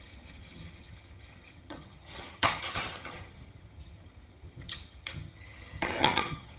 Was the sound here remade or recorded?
remade